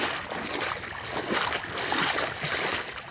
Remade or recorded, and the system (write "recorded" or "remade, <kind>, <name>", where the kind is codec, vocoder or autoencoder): recorded